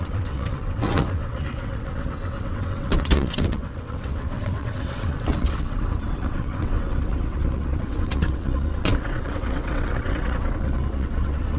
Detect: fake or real fake